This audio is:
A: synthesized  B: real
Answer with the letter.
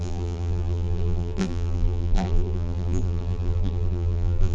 A